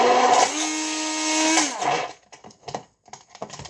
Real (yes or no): yes